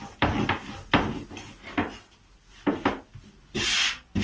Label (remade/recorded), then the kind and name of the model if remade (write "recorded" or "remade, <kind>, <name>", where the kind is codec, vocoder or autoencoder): recorded